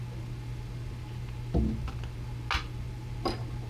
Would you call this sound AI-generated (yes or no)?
no